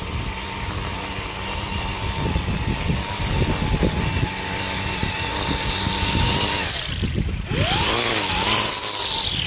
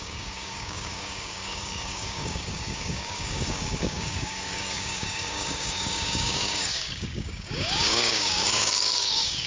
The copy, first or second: second